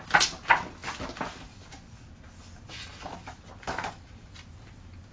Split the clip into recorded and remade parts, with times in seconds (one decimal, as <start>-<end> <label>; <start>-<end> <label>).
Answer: 0.0-5.1 recorded